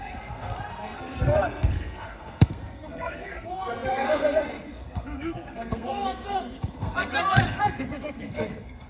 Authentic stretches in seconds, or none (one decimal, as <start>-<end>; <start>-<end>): none